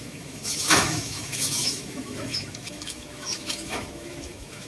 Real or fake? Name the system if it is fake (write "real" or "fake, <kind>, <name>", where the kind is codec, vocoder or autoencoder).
fake, autoencoder, DAC-VAE